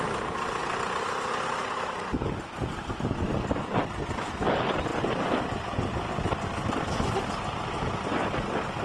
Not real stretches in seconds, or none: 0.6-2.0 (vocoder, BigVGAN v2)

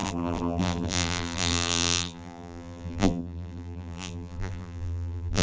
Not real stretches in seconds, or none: 0.0-5.4 (vocoder, BigVGAN v2)

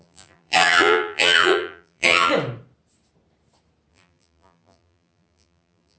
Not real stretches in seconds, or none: 0.0-2.3 (vocoder, BigVGAN v2); 3.9-6.0

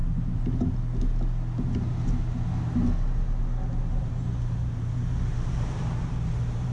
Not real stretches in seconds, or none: 4.0-6.7 (vocoder, BigVGAN v2)

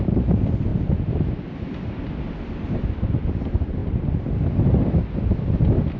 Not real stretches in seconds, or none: none

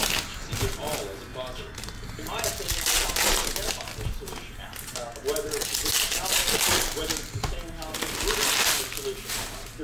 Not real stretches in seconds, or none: 5.8-6.3 (vocoder, BigVGAN v2)